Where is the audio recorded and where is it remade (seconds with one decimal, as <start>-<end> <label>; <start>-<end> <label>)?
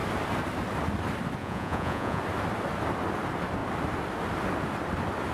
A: 0.0-1.4 recorded; 1.4-2.2 remade; 2.2-5.3 recorded